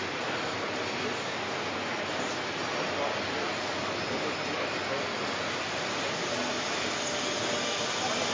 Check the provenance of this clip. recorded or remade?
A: recorded